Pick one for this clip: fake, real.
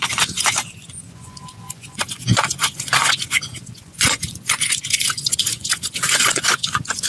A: fake